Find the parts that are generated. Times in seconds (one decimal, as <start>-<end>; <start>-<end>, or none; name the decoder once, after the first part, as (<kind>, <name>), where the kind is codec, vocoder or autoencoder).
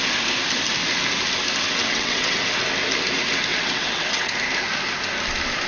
1.8-2.4 (vocoder, WaveNeXt); 3.5-4.3